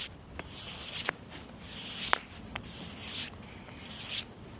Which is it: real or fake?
real